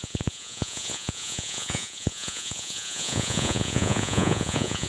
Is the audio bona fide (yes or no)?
no